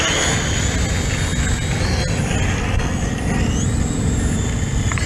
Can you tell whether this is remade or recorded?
recorded